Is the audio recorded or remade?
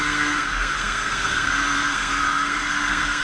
remade